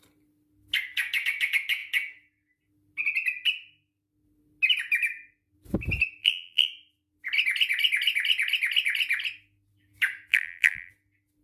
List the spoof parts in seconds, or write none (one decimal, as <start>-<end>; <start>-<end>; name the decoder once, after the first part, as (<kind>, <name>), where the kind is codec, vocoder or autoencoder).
6.2-6.7 (vocoder, BigVGAN v2); 10.3-10.9